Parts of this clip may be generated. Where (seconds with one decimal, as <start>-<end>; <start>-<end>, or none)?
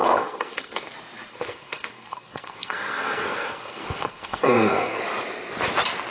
0.0-0.9; 1.3-5.0